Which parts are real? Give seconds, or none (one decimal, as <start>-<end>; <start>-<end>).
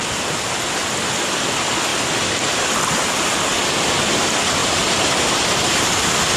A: 0.0-6.4